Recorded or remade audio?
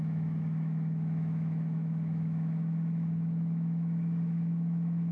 remade